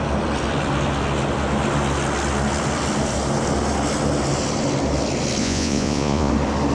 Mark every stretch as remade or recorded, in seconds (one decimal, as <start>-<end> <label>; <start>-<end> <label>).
0.0-5.4 recorded; 5.4-6.3 remade; 6.3-6.7 recorded